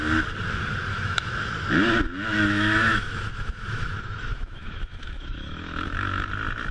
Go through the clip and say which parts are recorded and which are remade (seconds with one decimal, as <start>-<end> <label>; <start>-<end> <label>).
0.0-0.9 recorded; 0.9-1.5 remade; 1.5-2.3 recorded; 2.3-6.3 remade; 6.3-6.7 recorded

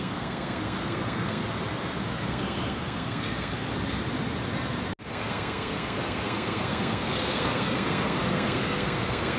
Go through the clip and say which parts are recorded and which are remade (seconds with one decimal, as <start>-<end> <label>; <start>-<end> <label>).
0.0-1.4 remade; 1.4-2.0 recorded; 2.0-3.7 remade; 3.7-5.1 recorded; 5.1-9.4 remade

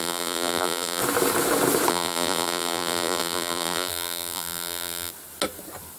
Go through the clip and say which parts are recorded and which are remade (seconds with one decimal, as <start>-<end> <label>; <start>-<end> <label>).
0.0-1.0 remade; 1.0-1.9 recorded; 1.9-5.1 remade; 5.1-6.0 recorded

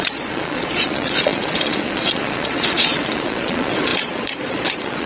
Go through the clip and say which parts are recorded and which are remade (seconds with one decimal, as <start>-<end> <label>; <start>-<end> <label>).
0.0-5.1 remade